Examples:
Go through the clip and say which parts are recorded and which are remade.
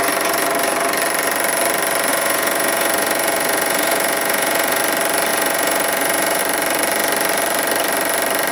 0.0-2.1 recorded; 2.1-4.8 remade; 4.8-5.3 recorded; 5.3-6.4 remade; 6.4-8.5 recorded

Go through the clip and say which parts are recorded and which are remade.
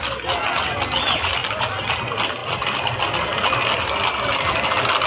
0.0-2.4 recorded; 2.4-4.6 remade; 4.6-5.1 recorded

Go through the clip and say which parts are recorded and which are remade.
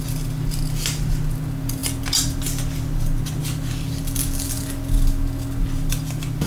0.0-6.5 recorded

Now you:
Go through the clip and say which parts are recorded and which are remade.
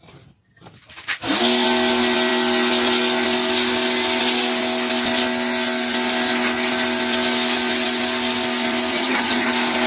0.0-8.9 recorded; 8.9-9.5 remade; 9.5-9.9 recorded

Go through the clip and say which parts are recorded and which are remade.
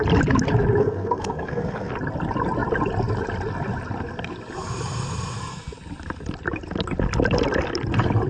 0.0-0.8 recorded; 0.8-1.9 remade; 1.9-8.3 recorded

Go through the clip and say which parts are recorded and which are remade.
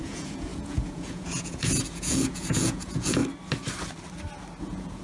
0.0-3.2 remade; 3.2-4.6 recorded; 4.6-5.0 remade